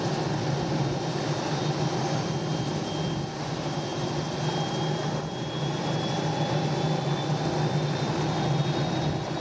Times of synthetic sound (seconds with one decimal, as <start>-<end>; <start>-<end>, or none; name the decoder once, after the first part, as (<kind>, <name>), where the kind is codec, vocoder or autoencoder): none